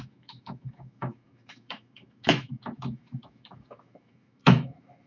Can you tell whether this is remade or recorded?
remade